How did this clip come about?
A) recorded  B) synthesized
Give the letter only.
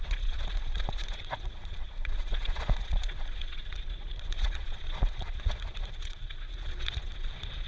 B